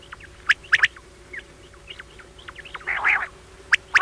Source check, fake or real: real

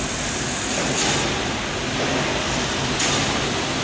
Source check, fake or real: real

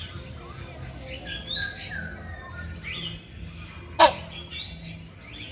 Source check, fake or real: real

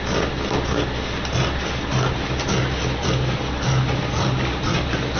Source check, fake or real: real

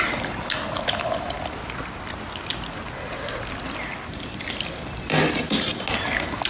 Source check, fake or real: real